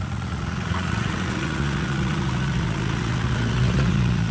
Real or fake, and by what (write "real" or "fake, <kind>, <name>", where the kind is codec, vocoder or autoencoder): fake, vocoder, Vocos